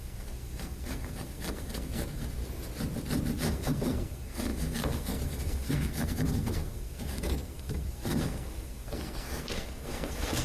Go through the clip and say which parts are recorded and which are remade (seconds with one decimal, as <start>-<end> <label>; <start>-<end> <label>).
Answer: 0.0-2.4 remade; 2.4-3.5 recorded; 3.5-10.4 remade